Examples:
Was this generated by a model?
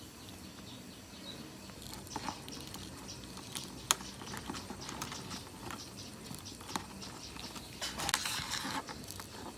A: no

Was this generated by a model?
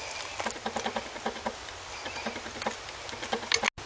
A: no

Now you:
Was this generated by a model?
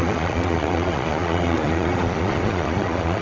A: yes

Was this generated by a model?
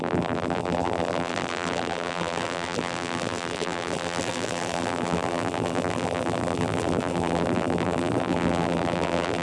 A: yes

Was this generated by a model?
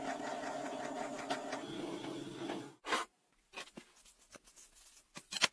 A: no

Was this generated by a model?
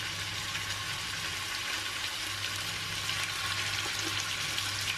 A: no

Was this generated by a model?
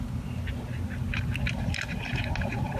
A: no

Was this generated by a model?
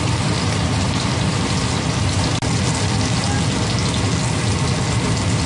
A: no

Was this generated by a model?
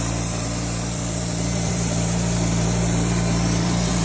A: yes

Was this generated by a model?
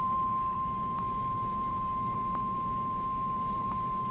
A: yes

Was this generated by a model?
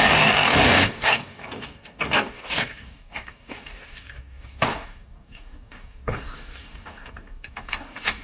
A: yes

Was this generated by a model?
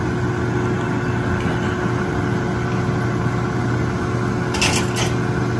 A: no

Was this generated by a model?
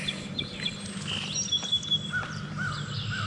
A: no